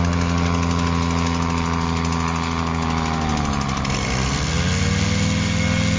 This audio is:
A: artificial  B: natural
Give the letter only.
B